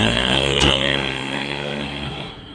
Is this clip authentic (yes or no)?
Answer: no